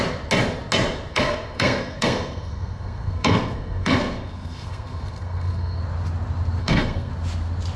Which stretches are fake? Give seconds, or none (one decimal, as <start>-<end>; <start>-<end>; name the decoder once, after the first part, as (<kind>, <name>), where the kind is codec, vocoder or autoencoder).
1.1-5.8 (codec, SNAC); 6.6-7.1